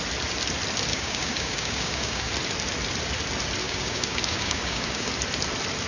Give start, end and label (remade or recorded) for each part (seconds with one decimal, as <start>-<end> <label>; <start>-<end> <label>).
0.0-0.9 recorded; 0.9-2.3 remade; 2.3-3.6 recorded; 3.6-5.1 remade; 5.1-5.9 recorded